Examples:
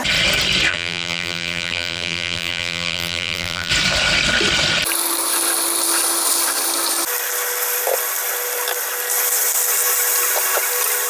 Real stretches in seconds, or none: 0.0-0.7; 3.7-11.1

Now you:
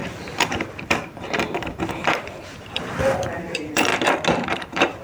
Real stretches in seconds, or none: 3.9-4.5